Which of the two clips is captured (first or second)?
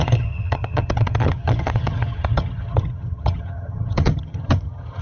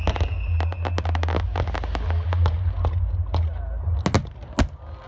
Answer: second